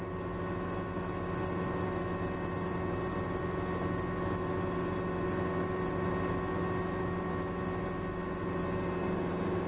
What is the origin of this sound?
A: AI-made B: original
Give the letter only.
B